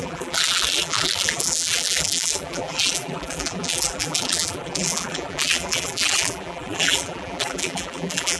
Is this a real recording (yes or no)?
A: no